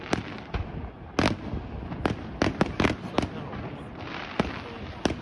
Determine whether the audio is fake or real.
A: real